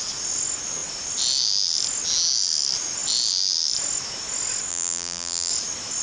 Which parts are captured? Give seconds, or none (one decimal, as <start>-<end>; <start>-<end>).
0.0-4.7; 5.5-6.0